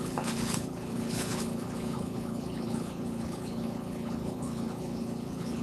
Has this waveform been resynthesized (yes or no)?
yes